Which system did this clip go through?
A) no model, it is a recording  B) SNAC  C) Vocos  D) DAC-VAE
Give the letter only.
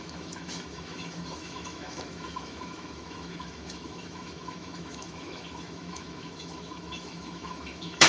D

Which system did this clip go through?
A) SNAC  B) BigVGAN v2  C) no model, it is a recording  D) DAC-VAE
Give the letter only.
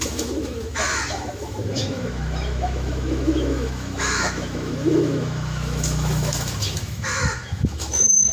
D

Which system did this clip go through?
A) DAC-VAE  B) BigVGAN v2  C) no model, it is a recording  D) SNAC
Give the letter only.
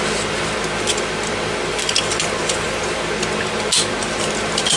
C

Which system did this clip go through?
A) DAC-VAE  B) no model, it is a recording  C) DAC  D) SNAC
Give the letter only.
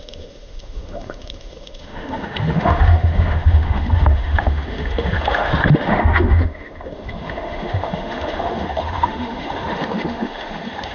A